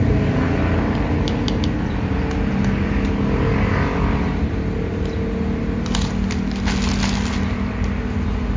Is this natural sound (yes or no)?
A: yes